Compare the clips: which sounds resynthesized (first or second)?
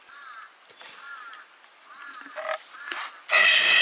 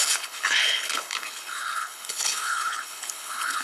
second